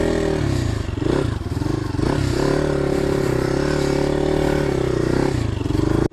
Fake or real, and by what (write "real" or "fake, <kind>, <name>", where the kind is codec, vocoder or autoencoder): real